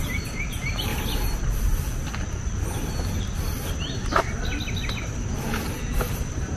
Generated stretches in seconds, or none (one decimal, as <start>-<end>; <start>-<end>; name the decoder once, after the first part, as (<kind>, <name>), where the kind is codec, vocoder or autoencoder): 0.0-0.9 (vocoder, BigVGAN v2); 4.9-6.6